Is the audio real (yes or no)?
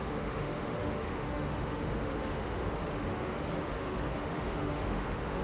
no